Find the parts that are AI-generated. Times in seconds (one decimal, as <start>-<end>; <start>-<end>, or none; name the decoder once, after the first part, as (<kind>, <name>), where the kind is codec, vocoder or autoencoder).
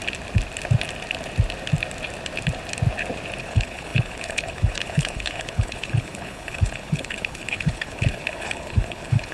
3.4-9.3 (codec, HILCodec)